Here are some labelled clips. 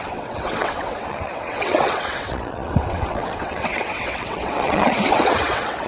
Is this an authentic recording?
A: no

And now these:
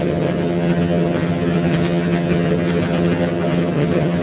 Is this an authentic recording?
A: no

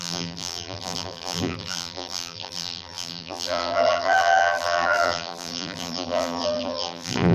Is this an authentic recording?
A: no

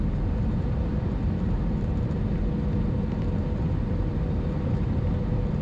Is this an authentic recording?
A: no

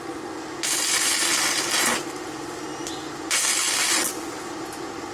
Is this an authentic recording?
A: yes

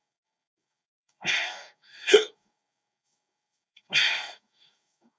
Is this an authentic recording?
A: no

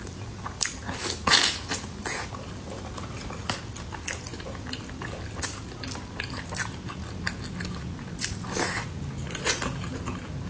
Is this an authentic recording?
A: yes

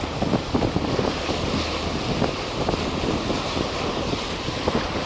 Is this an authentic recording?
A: yes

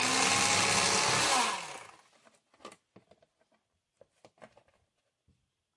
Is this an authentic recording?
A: yes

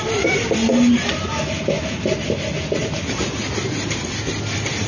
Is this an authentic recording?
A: yes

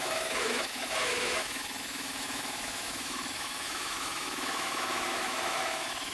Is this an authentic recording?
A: no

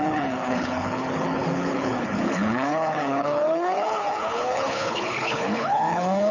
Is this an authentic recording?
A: no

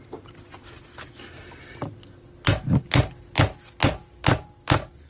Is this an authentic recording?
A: yes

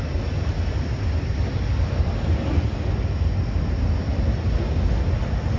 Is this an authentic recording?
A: yes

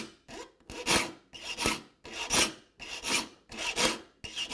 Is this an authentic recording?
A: yes